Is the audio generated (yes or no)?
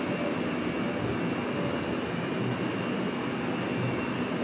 no